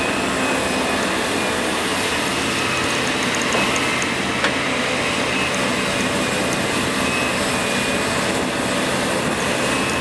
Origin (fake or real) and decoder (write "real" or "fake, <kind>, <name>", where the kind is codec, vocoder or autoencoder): real